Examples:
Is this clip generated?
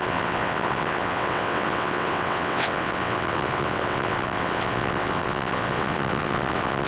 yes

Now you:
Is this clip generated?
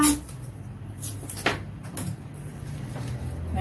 no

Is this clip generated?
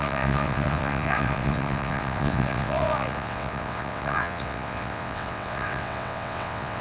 yes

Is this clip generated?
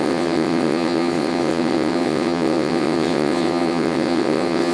yes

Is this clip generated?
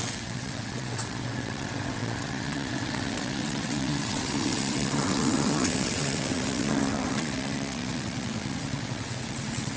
yes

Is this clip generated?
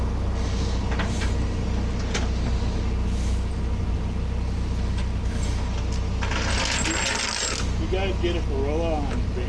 no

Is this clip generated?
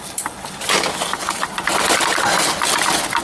no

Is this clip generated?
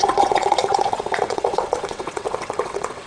yes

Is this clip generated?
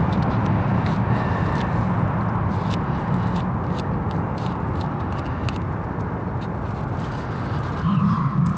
no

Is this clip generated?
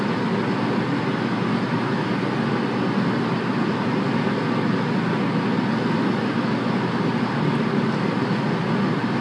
no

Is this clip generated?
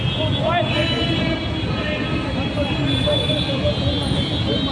no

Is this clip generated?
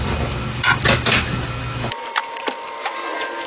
no